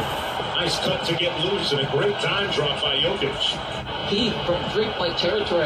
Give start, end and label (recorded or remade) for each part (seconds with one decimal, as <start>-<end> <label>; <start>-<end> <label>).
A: 0.0-4.0 recorded; 4.0-5.0 remade; 5.0-5.7 recorded